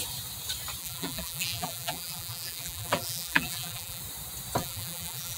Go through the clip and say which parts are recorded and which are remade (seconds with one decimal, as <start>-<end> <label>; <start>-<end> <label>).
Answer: 0.0-0.8 recorded; 0.8-4.0 remade; 4.0-4.6 recorded; 4.6-5.4 remade